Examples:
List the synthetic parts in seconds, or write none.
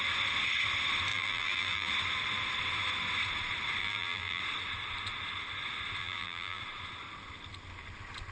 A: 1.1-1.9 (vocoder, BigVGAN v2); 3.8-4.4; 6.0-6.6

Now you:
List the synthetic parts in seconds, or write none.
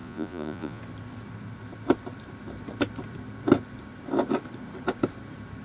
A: 0.0-0.8 (vocoder, Vocos)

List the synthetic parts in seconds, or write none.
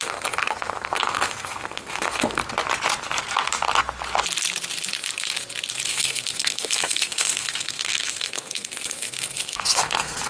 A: 0.0-2.4 (codec, SNAC); 5.9-10.3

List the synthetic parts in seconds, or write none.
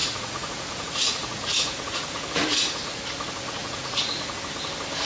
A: 0.0-3.0 (vocoder, Vocos); 3.6-4.4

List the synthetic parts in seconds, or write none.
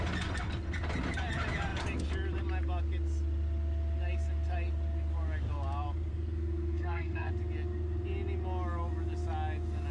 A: 6.1-7.3 (codec, SNAC)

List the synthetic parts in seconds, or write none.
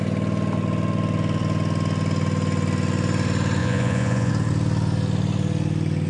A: 3.6-4.3 (vocoder, Vocos)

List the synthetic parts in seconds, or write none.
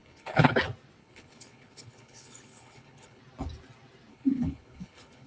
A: 0.0-0.5 (codec, HILCodec); 1.0-3.2; 4.1-5.3